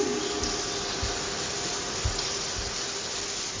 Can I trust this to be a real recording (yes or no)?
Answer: yes